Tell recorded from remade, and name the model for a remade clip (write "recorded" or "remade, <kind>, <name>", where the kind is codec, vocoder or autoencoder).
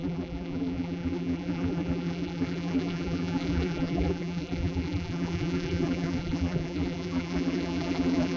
remade, vocoder, BigVGAN v2